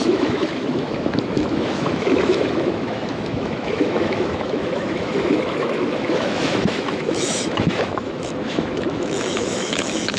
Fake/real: fake